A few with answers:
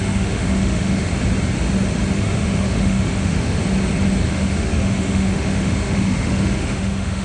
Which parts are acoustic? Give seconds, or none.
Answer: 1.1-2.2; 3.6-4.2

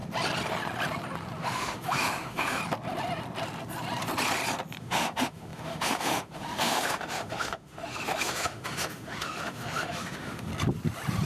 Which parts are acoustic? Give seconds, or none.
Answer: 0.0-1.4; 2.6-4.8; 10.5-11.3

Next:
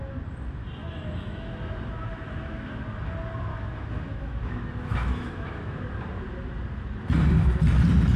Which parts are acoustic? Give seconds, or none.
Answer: 0.0-0.8; 1.6-2.1; 2.8-3.5; 5.8-8.2

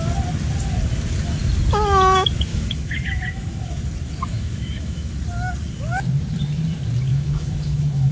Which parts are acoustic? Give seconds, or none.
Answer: 0.0-2.5; 3.8-4.3; 5.1-7.1

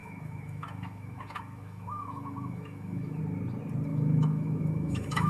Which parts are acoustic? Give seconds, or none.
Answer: 3.2-3.9

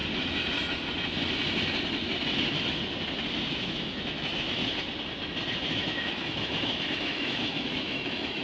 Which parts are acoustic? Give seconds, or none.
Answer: 0.0-3.5; 4.6-5.7

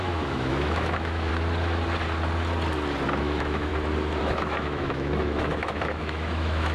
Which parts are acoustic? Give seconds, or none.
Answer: 1.3-3.2; 3.7-4.2